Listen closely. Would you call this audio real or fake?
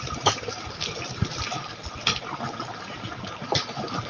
fake